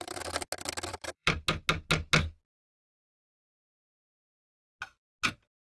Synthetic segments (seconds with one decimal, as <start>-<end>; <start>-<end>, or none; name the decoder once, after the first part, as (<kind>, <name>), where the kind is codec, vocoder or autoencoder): 0.9-1.4 (vocoder, BigVGAN v2)